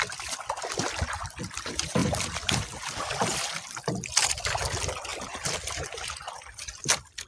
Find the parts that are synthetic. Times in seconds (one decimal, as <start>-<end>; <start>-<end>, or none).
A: 2.0-3.4; 4.1-4.6; 5.1-5.9